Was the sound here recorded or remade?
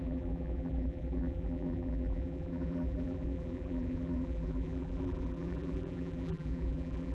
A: remade